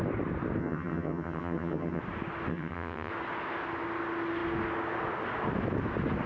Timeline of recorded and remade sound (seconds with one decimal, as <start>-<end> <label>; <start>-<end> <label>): 0.0-0.6 recorded; 0.6-2.0 remade; 2.0-2.5 recorded; 2.5-3.1 remade; 3.1-6.3 recorded